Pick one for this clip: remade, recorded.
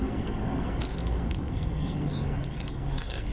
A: remade